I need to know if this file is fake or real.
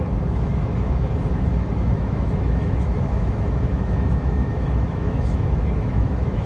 fake